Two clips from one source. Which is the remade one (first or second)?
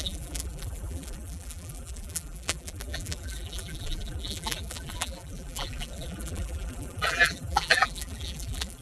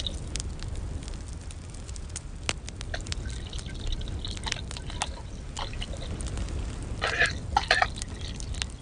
first